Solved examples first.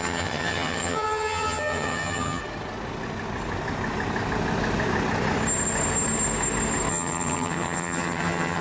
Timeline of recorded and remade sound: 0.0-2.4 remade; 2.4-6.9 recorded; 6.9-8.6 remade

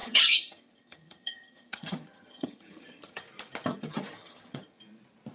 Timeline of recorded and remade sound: 0.0-3.2 remade; 3.2-3.7 recorded; 3.7-4.8 remade; 4.8-5.3 recorded

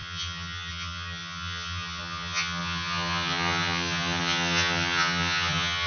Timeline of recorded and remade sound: 0.0-5.9 remade

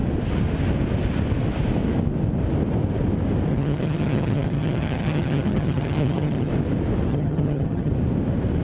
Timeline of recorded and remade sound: 0.0-3.5 recorded; 3.5-6.5 remade; 6.5-7.1 recorded; 7.1-7.9 remade; 7.9-8.6 recorded

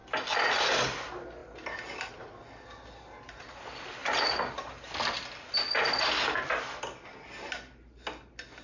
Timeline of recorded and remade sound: 0.0-8.6 recorded